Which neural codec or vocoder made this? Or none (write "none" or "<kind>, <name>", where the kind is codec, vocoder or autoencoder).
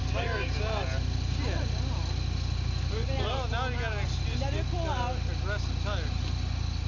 none